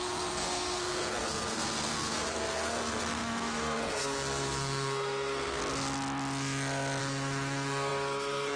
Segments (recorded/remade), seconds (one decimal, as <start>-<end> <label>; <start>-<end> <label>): 0.0-5.6 remade; 5.6-7.0 recorded; 7.0-8.6 remade